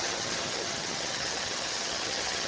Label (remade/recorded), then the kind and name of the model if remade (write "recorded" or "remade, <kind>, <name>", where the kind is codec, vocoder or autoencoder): remade, vocoder, HiFi-GAN